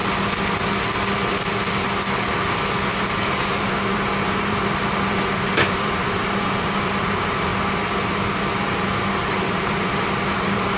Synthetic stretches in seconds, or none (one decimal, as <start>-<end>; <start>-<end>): 3.3-7.5; 8.6-10.8